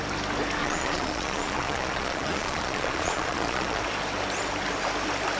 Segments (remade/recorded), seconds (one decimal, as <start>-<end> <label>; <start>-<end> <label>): 0.0-0.6 recorded; 0.6-3.8 remade; 3.8-5.4 recorded